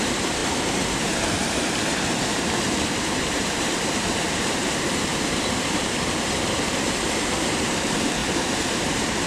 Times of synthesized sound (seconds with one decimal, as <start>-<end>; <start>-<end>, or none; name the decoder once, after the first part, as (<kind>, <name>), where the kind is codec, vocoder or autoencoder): 0.0-8.2 (vocoder, BigVGAN v2); 8.8-9.3